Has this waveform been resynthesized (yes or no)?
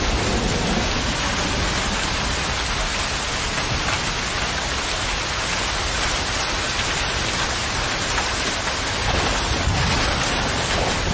no